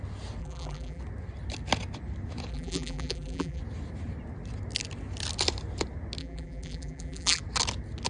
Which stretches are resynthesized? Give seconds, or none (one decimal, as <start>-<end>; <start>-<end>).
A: 0.4-1.0; 2.5-3.6; 6.2-7.4